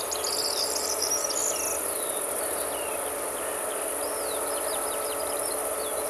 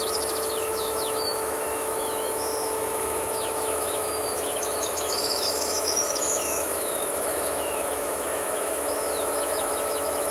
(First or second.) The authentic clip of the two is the first